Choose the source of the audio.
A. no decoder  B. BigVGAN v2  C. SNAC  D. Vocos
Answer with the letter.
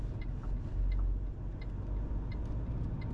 A